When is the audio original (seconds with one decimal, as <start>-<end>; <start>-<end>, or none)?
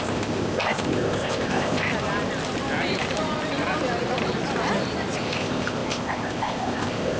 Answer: 1.9-5.2